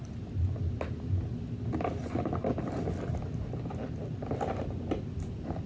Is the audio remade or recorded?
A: recorded